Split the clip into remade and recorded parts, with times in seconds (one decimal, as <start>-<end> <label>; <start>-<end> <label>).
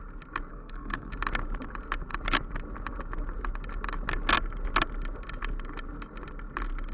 0.0-0.5 recorded; 0.5-1.1 remade; 1.1-6.9 recorded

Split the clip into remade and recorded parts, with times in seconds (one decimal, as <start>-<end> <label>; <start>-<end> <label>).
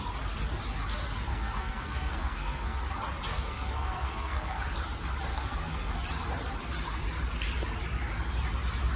0.0-1.3 recorded; 1.3-2.8 remade; 2.8-3.3 recorded; 3.3-4.6 remade; 4.6-5.3 recorded; 5.3-5.9 remade; 5.9-9.0 recorded